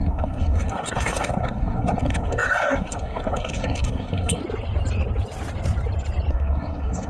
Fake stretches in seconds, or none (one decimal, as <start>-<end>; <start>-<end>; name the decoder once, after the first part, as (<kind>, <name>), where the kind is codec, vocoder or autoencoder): 0.0-4.4 (codec, SNAC); 6.3-7.1